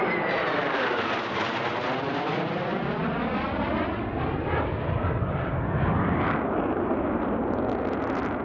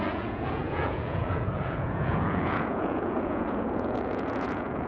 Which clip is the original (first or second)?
first